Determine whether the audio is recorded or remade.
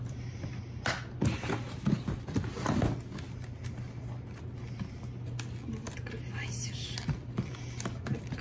recorded